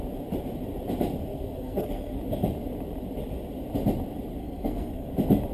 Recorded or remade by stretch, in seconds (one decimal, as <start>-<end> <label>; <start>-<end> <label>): 0.0-1.3 recorded; 1.3-2.2 remade; 2.2-4.4 recorded; 4.4-5.1 remade; 5.1-5.5 recorded